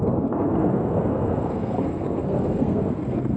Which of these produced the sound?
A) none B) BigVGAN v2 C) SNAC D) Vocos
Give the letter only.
C